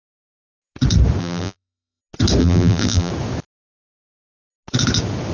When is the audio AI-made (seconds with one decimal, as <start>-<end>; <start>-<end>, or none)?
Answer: 1.2-2.0; 2.4-3.1